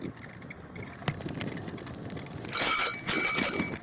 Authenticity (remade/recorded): recorded